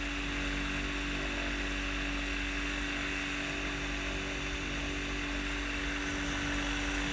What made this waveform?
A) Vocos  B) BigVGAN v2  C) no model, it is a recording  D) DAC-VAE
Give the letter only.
C